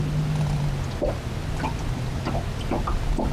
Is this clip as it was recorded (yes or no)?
yes